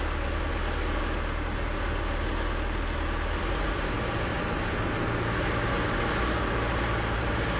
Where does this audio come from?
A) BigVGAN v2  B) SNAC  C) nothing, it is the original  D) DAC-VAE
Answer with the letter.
C